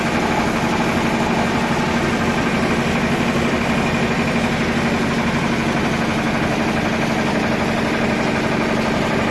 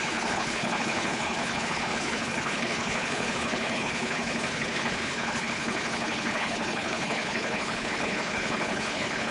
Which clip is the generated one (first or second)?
second